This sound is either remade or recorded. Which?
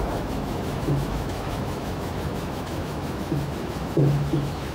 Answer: remade